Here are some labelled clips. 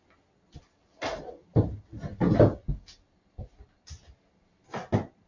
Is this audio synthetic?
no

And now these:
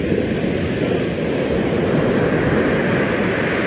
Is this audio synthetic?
no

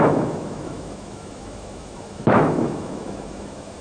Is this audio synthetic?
yes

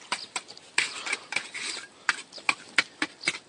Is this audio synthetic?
no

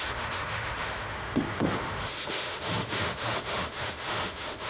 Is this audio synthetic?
yes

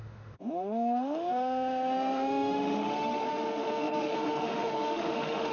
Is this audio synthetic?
yes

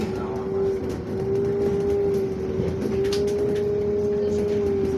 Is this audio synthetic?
no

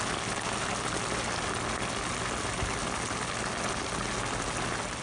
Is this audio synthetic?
no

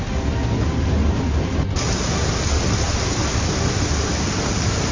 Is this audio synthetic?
no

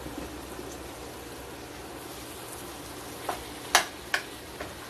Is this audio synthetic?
no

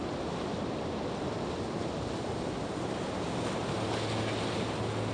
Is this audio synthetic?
no